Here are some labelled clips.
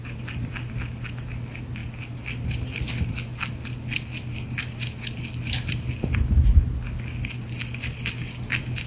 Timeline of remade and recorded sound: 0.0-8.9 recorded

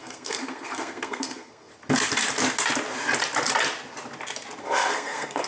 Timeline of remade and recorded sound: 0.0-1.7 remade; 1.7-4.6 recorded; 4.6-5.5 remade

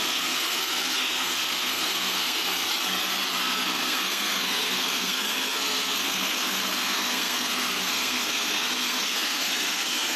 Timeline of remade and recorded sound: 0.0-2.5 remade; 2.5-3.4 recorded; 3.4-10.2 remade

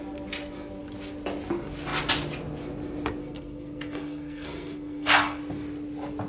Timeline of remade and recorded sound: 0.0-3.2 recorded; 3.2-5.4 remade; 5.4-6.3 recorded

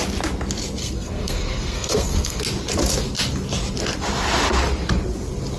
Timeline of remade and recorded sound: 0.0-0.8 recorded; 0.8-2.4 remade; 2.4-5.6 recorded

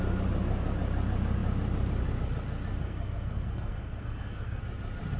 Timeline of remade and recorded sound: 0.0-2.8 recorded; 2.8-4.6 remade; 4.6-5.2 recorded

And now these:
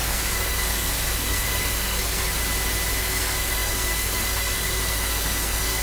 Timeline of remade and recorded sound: 0.0-2.4 remade; 2.4-3.0 recorded; 3.0-5.8 remade